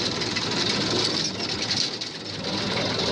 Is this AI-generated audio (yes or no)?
no